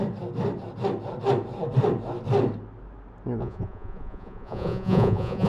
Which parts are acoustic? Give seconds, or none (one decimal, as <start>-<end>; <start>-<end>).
0.0-3.4